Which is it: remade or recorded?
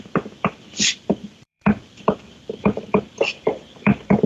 remade